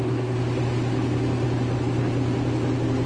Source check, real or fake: real